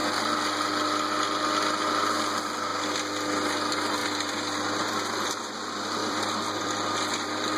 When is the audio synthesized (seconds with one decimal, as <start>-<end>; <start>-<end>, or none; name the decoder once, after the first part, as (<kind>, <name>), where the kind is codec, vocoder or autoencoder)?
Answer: 4.0-5.4 (vocoder, BigVGAN v2); 6.0-7.6